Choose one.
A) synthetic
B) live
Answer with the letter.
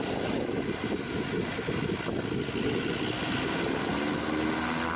B